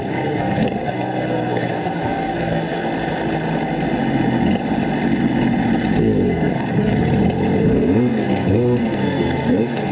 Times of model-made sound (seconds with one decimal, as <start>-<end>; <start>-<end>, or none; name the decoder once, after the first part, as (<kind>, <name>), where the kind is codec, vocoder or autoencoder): 0.0-2.8 (codec, SNAC); 6.0-6.9; 7.6-9.9